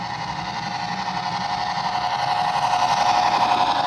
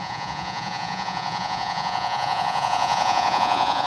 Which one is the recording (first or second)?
first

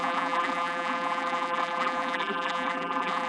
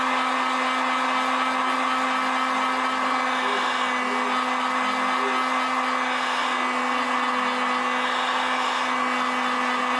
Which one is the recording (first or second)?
second